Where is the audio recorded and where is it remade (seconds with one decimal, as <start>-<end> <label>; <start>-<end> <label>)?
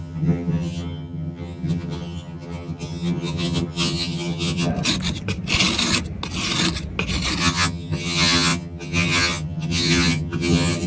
0.0-4.7 remade; 4.7-7.4 recorded; 7.4-10.9 remade